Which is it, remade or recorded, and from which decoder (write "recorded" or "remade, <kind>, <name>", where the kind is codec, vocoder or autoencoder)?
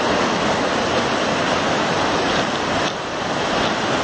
recorded